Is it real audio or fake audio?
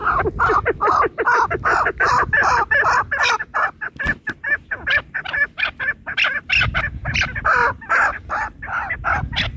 real